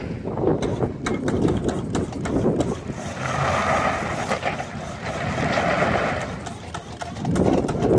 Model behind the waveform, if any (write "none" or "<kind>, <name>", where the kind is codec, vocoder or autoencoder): none